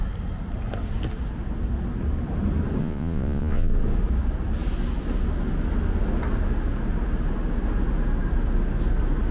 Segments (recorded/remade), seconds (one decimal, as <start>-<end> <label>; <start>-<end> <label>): 0.0-2.8 recorded; 2.8-3.7 remade; 3.7-9.3 recorded